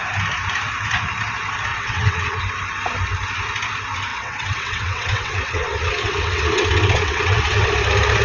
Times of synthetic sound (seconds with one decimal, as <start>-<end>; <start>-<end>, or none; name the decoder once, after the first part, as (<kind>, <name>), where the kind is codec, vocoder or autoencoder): 1.7-2.4 (vocoder, WaveNeXt); 4.1-7.7